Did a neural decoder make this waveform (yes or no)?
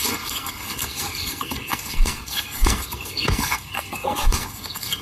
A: yes